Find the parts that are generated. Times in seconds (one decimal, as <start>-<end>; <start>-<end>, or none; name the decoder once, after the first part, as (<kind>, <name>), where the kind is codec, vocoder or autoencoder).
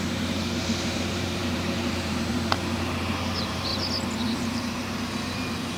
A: 0.0-3.7 (vocoder, BigVGAN v2); 4.3-5.8